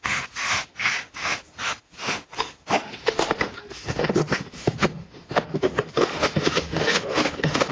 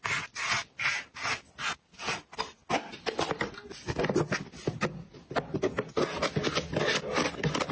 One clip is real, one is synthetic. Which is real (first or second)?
second